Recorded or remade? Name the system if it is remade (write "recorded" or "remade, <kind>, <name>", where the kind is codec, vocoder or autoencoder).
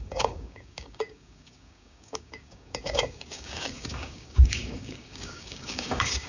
remade, codec, DAC